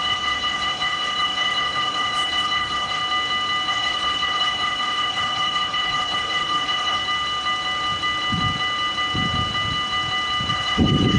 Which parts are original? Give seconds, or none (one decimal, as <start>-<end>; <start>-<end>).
3.0-3.7; 7.0-10.5

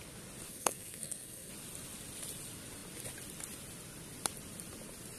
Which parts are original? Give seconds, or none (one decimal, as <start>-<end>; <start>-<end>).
0.0-0.5; 1.5-5.2

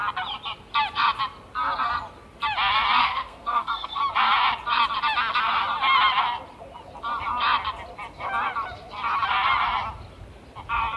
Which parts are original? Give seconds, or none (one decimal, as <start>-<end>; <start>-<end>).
0.0-3.0; 4.0-11.0

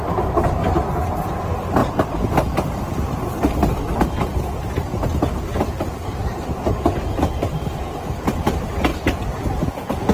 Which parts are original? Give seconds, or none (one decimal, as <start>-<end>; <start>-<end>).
0.0-1.8; 4.4-10.1

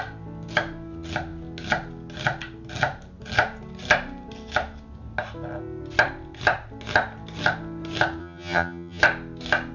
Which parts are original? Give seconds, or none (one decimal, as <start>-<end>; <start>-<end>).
0.0-8.2; 9.0-9.7

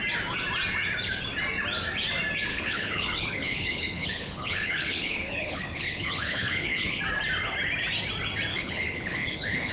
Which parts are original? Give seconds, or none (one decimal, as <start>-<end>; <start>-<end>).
0.0-2.5; 7.0-8.5

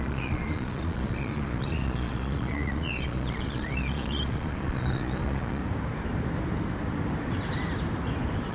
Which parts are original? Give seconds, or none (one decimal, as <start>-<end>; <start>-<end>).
5.6-8.5

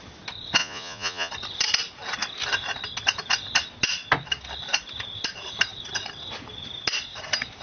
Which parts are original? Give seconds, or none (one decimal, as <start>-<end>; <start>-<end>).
0.0-0.6; 1.3-7.6